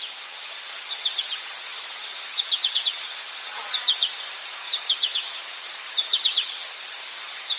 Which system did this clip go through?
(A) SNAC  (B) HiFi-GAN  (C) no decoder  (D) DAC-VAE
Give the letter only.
B